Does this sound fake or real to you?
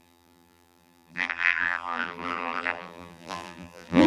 fake